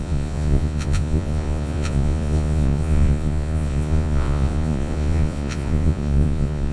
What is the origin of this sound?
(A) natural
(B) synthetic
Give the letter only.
B